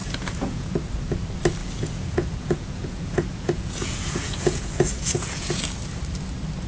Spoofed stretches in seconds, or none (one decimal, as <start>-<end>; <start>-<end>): 0.0-0.7; 1.6-5.6